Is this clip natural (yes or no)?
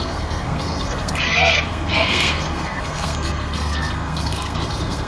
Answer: no